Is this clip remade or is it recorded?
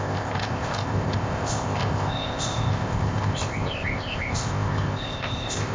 remade